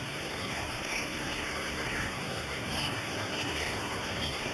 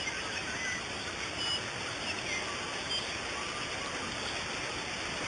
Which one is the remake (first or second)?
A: first